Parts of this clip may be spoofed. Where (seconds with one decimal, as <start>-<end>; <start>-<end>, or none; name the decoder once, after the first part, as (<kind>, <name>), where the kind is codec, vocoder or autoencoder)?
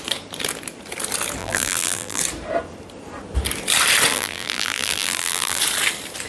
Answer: 1.4-2.2 (vocoder, BigVGAN v2); 4.1-5.6